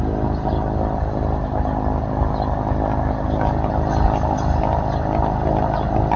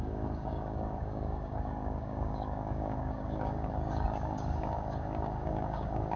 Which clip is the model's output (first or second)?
second